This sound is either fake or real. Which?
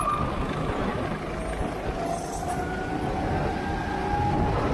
real